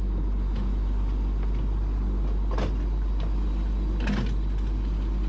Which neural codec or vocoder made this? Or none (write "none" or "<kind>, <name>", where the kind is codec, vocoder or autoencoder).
none